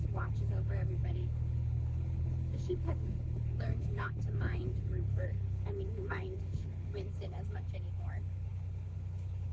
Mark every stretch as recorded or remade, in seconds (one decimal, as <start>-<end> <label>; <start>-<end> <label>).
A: 0.0-9.5 remade